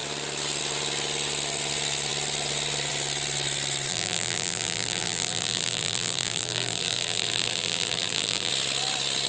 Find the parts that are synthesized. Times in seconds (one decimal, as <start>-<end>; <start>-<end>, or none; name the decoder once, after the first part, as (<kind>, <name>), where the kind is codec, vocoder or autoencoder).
3.9-8.5 (vocoder, BigVGAN v2)